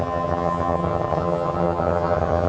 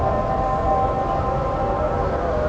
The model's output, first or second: first